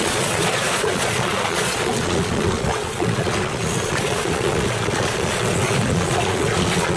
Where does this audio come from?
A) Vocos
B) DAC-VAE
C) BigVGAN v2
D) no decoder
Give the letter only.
A